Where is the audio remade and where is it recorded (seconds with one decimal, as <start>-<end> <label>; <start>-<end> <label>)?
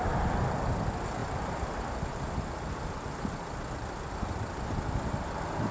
0.0-5.7 recorded